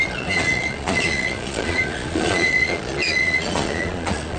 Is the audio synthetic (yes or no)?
yes